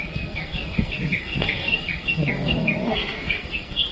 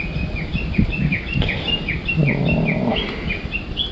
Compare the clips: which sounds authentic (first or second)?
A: second